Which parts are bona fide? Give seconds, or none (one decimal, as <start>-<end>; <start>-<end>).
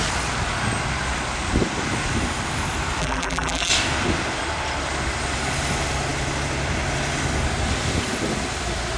0.0-3.0; 3.7-9.0